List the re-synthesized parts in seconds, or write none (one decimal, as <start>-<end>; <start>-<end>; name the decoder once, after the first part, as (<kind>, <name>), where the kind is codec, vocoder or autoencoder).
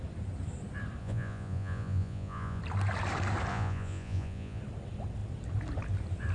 1.0-2.6 (vocoder, Vocos); 3.5-4.6